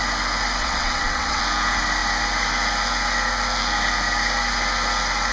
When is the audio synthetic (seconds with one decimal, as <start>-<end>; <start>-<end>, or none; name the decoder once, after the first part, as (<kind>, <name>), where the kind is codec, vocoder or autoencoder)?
0.6-1.4 (vocoder, WaveNeXt)

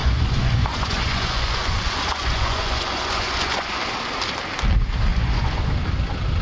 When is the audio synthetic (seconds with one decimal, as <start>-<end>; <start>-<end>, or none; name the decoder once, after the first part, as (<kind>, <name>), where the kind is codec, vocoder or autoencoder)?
0.0-3.8 (vocoder, Vocos); 5.1-5.7

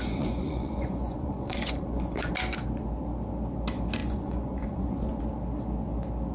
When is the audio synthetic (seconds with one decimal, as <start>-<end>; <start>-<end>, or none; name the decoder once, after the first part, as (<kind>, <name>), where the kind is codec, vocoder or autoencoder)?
0.0-2.3 (vocoder, Vocos); 4.0-5.2

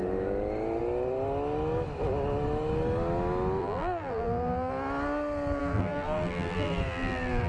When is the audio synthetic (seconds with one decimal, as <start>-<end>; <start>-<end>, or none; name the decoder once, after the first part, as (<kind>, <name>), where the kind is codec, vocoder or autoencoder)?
3.6-4.7 (vocoder, BigVGAN v2); 5.6-7.5

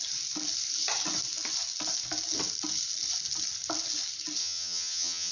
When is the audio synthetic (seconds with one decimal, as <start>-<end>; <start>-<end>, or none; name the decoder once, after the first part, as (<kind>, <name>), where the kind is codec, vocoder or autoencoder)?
4.4-5.3 (vocoder, HiFi-GAN)